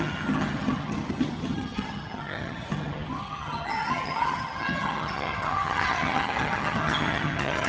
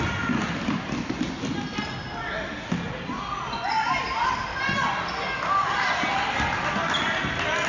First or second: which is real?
second